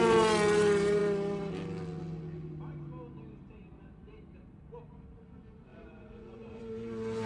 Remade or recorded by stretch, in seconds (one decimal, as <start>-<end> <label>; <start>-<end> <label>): 0.0-5.7 recorded; 5.7-6.6 remade; 6.6-7.3 recorded